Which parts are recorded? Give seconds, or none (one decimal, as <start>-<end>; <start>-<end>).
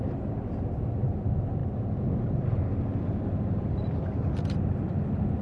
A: 0.0-5.4